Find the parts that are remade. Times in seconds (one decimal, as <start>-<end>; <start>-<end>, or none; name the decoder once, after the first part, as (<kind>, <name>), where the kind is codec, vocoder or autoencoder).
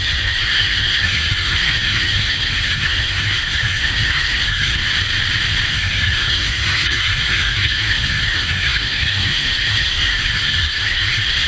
0.0-4.8 (codec, SNAC); 5.7-11.5